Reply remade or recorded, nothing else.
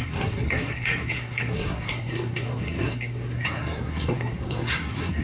remade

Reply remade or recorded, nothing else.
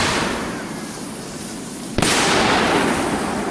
recorded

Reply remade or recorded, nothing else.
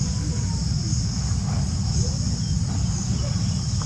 recorded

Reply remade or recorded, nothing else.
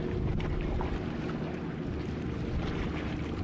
recorded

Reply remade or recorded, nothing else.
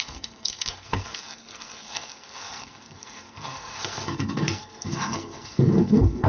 remade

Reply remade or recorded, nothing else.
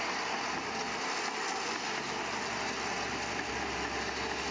recorded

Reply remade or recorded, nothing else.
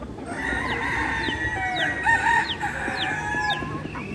recorded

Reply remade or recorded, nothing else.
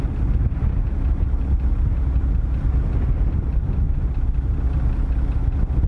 recorded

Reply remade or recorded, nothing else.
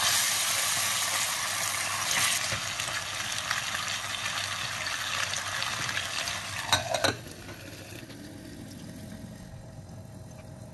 recorded